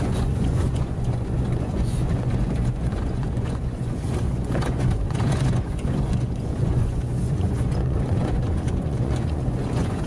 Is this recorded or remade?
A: remade